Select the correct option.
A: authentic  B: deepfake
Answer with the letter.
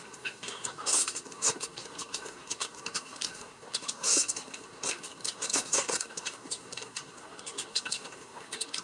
B